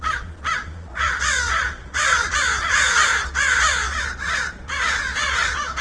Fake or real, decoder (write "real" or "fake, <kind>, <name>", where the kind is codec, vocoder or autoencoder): fake, vocoder, Vocos